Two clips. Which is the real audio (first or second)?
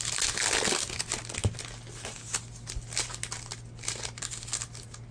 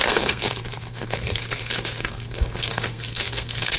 first